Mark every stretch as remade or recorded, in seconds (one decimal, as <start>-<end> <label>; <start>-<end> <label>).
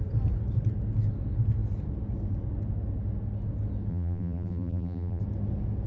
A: 0.0-3.9 recorded; 3.9-5.2 remade; 5.2-5.9 recorded